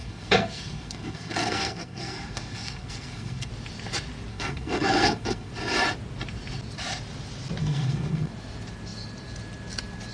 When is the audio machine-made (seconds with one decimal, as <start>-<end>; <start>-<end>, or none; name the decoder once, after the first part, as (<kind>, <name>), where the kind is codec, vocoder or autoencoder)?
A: 0.0-3.5 (codec, SNAC); 4.3-5.5; 7.6-8.3